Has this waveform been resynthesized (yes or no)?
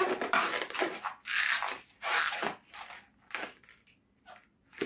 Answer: yes